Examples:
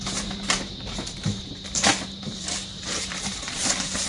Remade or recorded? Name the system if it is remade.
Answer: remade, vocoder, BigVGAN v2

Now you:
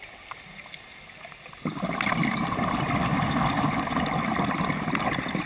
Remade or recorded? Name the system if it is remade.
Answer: recorded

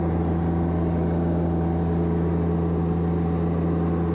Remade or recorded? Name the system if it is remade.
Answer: recorded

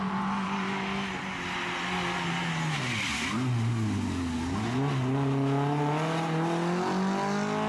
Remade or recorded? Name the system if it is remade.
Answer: recorded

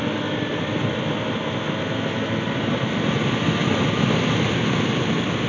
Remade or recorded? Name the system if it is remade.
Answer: recorded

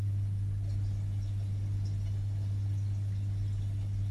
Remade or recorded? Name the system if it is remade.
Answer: recorded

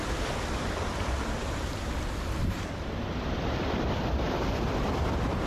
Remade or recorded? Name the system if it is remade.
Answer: remade, vocoder, BigVGAN v2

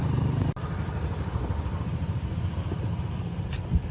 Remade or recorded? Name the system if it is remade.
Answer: recorded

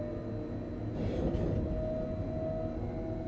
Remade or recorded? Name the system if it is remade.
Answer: recorded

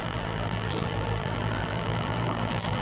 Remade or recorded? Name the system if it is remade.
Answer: remade, vocoder, BigVGAN v2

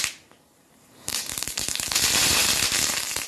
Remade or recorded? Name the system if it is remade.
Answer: remade, vocoder, BigVGAN v2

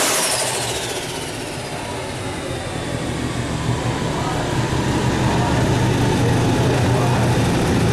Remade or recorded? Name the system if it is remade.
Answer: recorded